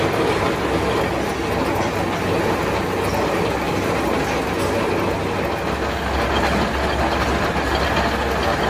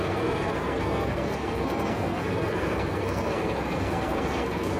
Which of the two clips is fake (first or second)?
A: second